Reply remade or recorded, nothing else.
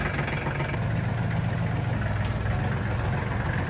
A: recorded